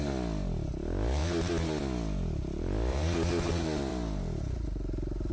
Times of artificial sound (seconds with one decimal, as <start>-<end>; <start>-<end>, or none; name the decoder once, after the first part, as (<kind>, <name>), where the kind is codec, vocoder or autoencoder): 2.9-3.5 (vocoder, BigVGAN v2); 3.9-5.3